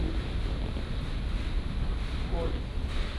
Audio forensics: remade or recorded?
recorded